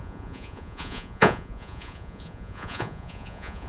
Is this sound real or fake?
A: fake